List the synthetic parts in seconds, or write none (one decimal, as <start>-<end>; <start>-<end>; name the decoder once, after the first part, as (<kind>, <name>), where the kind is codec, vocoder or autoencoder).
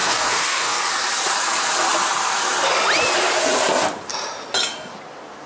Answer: 0.0-0.8 (codec, DAC)